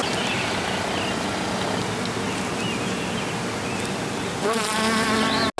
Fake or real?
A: real